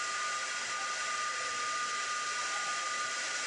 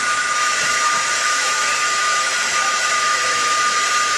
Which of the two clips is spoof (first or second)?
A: second